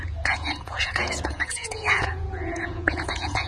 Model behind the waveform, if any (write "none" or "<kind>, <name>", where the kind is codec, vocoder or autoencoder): vocoder, Vocos